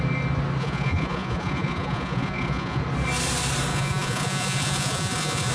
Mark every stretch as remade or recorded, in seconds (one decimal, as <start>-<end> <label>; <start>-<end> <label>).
0.0-0.6 recorded; 0.6-2.8 remade; 2.8-3.7 recorded; 3.7-5.5 remade